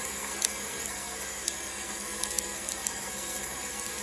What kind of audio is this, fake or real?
fake